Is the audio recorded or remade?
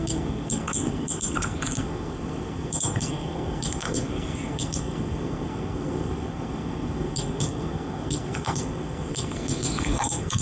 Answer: remade